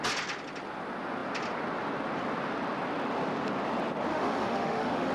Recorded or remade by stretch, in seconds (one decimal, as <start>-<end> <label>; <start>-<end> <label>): 0.0-4.1 recorded; 4.1-5.1 remade